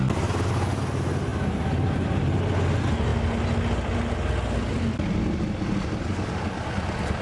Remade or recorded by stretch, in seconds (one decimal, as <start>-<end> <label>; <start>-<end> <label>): 0.0-7.2 recorded